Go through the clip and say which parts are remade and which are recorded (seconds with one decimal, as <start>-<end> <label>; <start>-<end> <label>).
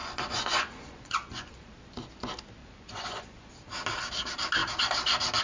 0.0-1.7 remade; 1.7-2.6 recorded; 2.6-3.5 remade; 3.5-5.4 recorded